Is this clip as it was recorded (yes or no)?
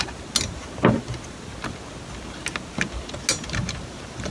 yes